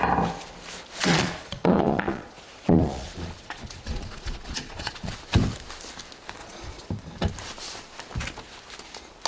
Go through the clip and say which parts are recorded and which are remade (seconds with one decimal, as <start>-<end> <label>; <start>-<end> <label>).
0.0-1.0 recorded; 1.0-5.1 remade; 5.1-6.4 recorded; 6.4-6.9 remade; 6.9-9.3 recorded